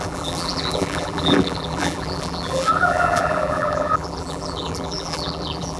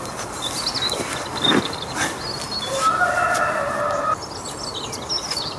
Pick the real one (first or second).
second